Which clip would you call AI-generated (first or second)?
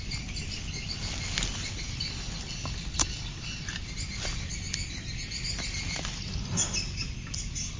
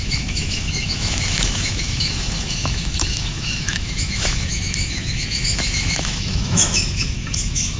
second